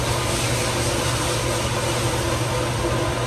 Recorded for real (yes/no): yes